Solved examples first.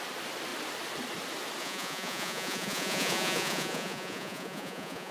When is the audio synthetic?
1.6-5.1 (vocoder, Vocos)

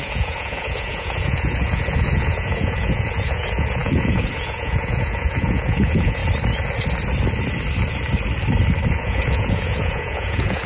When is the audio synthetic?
0.0-6.2 (vocoder, Vocos); 9.0-10.7

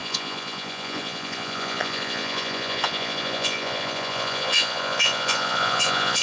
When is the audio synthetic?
0.0-6.2 (vocoder, Vocos)

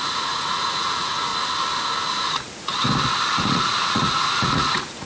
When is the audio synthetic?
0.0-1.3 (vocoder, Vocos); 2.1-2.7; 3.3-5.1

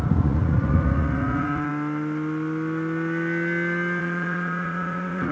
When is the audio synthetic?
0.0-1.7 (vocoder, Vocos); 4.0-5.3

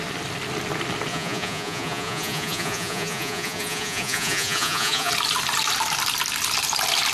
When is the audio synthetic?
1.1-5.1 (vocoder, Vocos)